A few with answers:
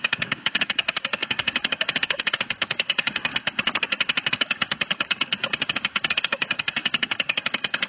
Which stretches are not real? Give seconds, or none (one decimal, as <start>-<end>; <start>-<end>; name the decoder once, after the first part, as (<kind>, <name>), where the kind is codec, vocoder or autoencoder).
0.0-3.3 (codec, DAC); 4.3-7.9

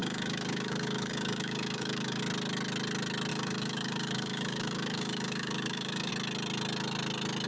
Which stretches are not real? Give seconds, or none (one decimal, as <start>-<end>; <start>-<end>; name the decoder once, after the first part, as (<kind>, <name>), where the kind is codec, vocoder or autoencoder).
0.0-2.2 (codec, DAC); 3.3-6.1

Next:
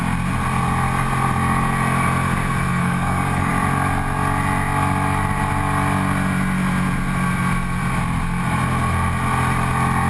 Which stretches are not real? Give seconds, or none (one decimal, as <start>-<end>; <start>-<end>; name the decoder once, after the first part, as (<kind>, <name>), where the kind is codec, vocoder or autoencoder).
2.7-3.5 (codec, DAC)

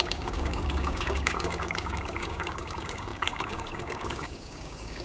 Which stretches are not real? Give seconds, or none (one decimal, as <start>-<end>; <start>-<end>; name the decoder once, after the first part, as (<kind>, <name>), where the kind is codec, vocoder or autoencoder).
0.0-5.0 (codec, DAC)

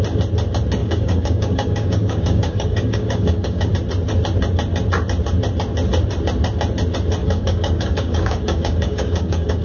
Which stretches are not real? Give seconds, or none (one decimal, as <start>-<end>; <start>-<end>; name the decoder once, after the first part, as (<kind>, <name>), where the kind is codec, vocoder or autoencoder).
0.8-3.7 (codec, DAC); 7.2-9.6

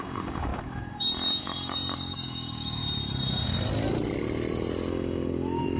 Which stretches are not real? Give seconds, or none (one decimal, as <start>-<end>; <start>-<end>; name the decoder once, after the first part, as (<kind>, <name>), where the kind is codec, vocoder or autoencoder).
0.0-2.8 (codec, DAC); 4.9-5.8